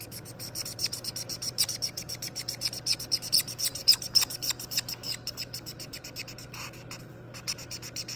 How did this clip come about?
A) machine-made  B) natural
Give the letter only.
B